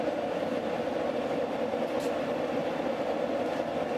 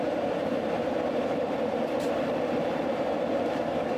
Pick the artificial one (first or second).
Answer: second